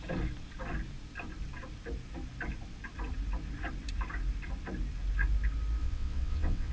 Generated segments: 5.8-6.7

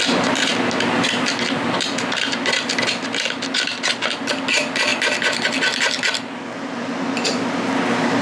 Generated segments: none

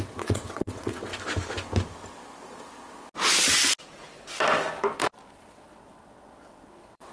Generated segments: 0.0-1.1; 5.3-7.1

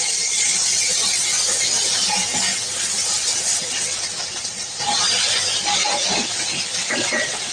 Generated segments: 2.5-4.8; 6.7-7.5

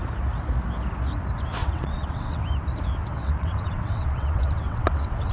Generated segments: 1.6-2.4; 3.0-5.3